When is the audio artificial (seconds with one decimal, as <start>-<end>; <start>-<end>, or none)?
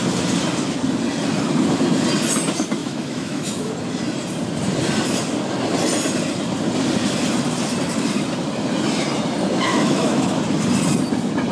2.8-3.7; 9.7-10.4